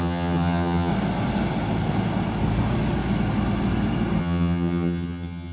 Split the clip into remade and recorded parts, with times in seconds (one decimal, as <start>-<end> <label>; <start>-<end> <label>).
0.0-0.9 remade; 0.9-4.2 recorded; 4.2-5.5 remade